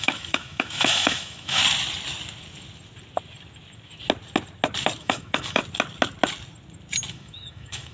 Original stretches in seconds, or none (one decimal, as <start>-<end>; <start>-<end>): 1.6-5.0; 5.6-7.1